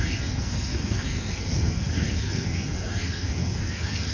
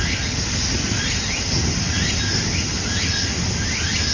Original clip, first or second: second